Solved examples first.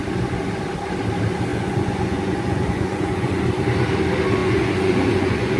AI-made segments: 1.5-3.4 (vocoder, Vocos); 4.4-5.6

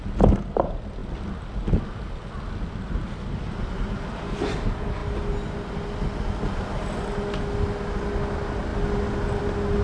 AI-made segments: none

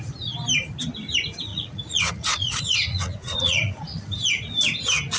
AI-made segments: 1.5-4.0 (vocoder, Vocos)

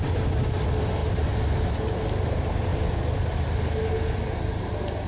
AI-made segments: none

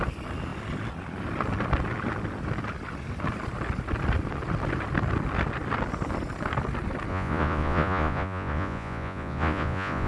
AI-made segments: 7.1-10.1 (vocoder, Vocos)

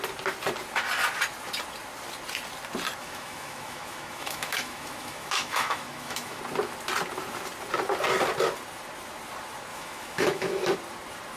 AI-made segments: 3.0-6.4 (autoencoder, DAC-VAE); 9.7-10.6